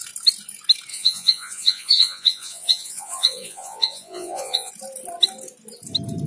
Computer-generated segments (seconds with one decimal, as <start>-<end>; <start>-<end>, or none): 0.9-4.7